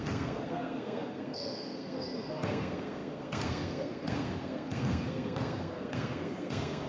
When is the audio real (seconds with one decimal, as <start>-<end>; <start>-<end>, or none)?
none